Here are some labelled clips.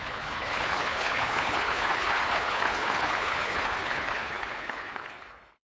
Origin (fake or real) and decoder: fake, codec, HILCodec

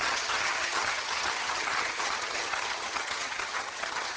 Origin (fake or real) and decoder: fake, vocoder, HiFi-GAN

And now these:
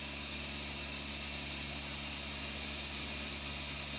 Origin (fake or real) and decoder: real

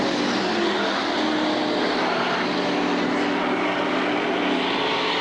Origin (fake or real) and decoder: real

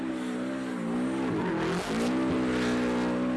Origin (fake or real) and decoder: real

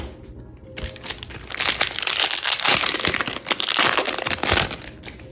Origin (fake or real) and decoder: real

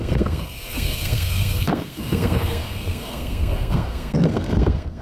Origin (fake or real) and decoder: fake, codec, SNAC